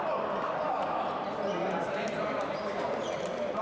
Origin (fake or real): real